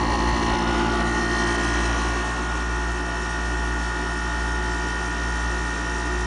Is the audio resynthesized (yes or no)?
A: no